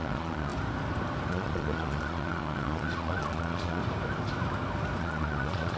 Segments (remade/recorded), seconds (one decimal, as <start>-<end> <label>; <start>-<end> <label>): 0.0-0.5 remade; 0.5-1.3 recorded; 1.3-3.8 remade; 3.8-5.0 recorded; 5.0-5.8 remade